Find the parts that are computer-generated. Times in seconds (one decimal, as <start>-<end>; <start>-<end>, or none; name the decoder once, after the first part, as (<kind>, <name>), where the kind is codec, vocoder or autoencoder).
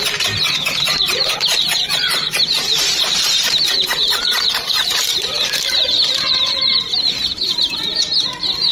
0.0-8.7 (vocoder, BigVGAN v2)